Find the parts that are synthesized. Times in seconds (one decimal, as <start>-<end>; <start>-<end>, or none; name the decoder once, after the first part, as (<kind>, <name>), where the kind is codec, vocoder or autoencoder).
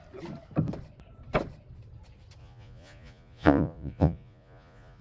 2.4-5.0 (vocoder, Vocos)